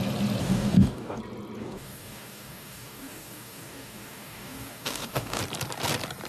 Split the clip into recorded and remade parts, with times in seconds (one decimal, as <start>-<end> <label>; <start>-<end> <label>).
0.0-0.4 recorded; 0.4-1.2 remade; 1.2-1.6 recorded; 1.6-5.4 remade; 5.4-6.3 recorded